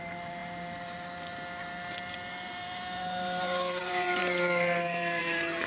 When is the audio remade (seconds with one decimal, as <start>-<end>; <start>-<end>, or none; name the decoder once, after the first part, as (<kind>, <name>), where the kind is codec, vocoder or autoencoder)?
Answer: 0.0-5.7 (vocoder, BigVGAN v2)